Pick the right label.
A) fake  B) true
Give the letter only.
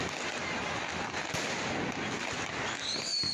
B